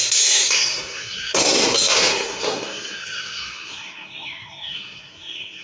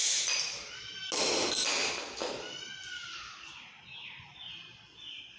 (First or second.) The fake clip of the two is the first